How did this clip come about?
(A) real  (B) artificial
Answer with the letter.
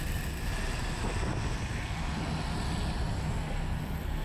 A